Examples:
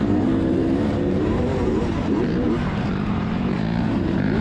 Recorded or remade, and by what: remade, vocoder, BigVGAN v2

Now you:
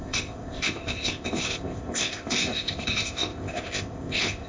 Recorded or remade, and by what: remade, codec, ZipCodec